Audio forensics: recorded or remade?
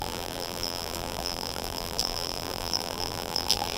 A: remade